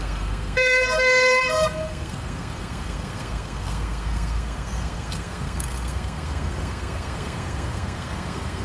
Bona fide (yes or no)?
no